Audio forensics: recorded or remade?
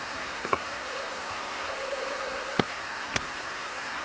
remade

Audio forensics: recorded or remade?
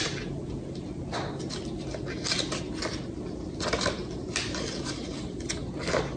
recorded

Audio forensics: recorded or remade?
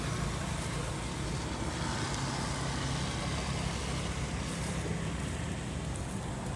recorded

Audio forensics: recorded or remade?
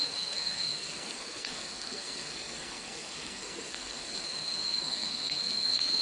remade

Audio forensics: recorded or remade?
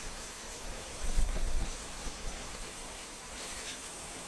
remade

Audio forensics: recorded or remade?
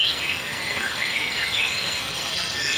remade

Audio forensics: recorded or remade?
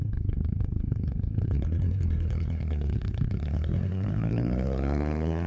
remade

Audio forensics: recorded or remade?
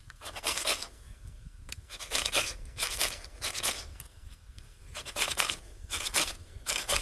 remade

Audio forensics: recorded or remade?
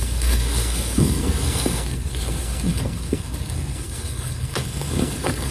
remade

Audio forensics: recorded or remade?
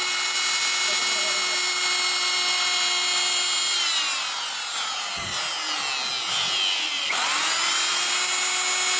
recorded